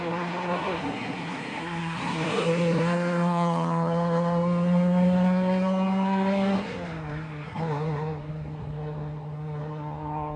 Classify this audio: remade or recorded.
remade